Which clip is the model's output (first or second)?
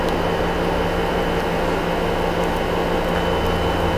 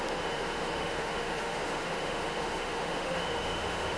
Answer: second